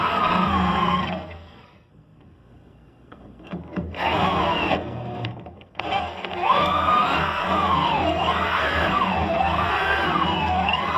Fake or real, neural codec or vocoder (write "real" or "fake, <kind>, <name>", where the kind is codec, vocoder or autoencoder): fake, codec, SNAC